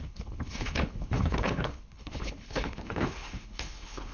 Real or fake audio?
fake